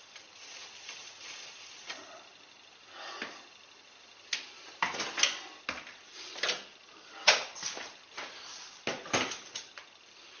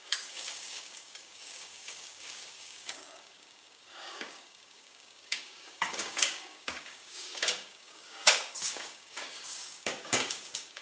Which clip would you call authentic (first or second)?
first